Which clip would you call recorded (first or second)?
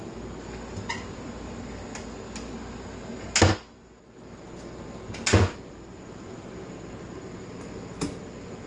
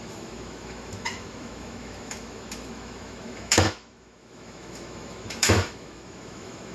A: first